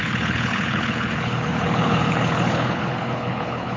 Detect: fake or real fake